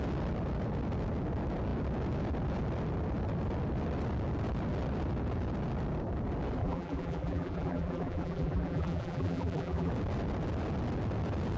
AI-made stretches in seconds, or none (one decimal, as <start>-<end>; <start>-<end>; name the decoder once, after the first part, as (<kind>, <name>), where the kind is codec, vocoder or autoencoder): 6.6-9.9 (vocoder, BigVGAN v2)